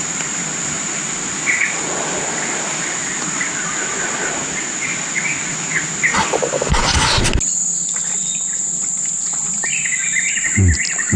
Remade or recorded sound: recorded